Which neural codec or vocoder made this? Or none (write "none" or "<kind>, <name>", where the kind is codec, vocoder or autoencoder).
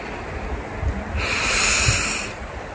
none